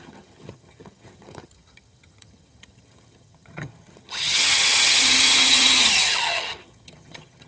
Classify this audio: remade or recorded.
remade